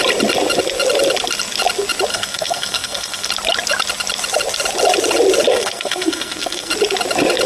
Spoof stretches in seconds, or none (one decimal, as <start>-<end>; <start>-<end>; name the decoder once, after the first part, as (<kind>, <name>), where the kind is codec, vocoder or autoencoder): 2.1-3.3 (codec, SNAC); 5.5-6.7